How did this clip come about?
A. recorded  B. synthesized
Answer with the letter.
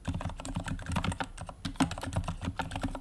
A